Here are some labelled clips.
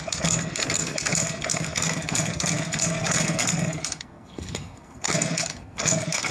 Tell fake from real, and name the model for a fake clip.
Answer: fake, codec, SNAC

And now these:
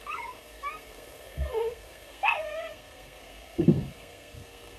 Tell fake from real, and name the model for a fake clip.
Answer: fake, codec, SNAC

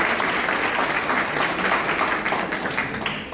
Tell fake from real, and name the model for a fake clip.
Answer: real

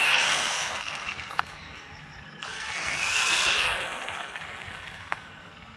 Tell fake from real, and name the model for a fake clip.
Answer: fake, codec, SNAC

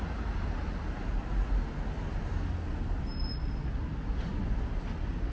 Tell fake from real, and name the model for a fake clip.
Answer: real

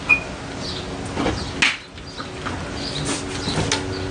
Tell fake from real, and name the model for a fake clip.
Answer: real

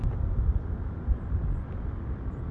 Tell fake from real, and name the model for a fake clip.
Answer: real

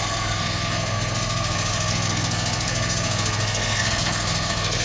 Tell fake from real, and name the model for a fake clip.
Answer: fake, codec, SNAC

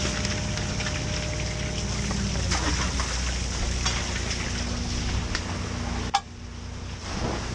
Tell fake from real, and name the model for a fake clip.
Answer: real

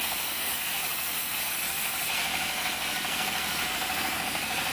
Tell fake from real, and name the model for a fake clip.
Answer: fake, codec, SNAC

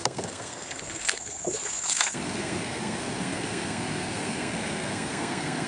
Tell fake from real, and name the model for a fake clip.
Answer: fake, codec, SNAC